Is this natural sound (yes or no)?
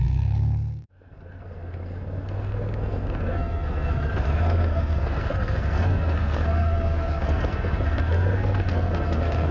no